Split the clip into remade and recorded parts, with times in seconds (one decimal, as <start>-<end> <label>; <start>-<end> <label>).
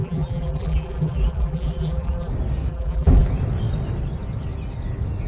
0.0-2.3 remade; 2.3-2.7 recorded; 2.7-3.3 remade; 3.3-5.3 recorded